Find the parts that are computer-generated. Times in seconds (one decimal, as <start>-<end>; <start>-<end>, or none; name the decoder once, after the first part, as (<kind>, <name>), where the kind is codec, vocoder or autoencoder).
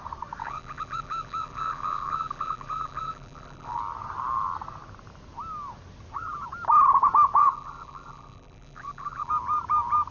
0.4-3.8 (vocoder, BigVGAN v2); 7.4-9.3